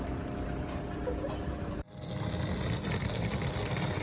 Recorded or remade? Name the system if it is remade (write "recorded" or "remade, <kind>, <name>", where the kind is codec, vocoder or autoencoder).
recorded